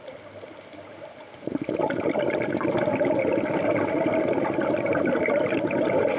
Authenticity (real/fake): real